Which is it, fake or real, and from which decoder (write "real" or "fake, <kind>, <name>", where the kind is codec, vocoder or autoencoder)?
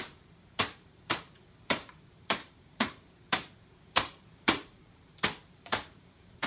fake, vocoder, BigVGAN v2